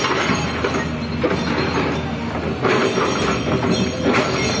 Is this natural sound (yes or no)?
yes